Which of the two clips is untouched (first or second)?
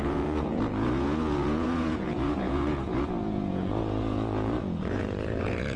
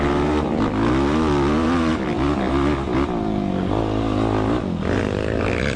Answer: second